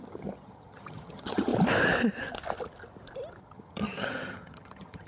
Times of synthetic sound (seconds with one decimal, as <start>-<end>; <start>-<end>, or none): 0.0-1.5; 3.4-5.1